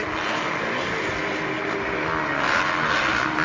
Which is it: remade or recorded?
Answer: recorded